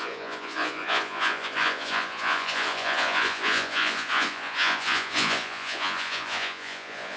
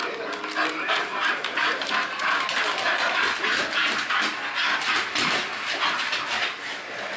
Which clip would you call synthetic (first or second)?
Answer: first